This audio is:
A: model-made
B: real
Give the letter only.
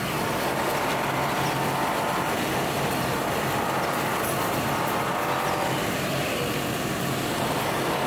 B